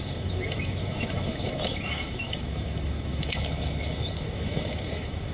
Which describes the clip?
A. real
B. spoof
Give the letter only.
B